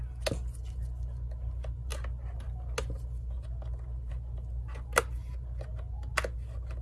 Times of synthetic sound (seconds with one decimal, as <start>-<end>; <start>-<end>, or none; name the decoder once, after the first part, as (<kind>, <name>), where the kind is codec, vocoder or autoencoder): none